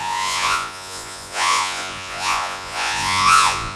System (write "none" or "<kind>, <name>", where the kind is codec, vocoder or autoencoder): vocoder, Vocos